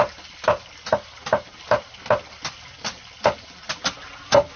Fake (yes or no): no